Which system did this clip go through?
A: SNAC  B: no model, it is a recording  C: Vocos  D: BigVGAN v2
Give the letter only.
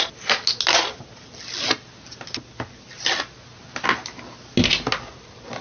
B